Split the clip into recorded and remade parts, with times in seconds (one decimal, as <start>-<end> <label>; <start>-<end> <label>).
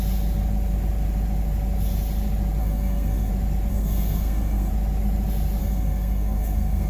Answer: 0.0-2.6 recorded; 2.6-3.3 remade; 3.3-3.7 recorded; 3.7-4.7 remade; 4.7-5.6 recorded; 5.6-6.9 remade